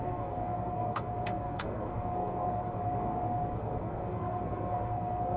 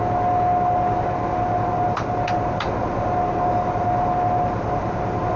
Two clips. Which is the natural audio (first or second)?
second